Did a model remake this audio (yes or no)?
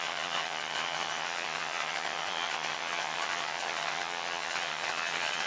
yes